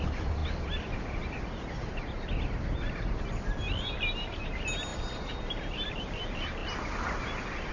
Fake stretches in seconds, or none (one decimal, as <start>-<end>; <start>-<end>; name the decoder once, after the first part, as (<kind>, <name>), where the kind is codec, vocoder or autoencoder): 4.9-6.0 (vocoder, BigVGAN v2)